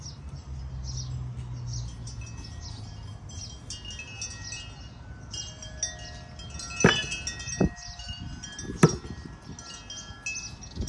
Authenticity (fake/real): real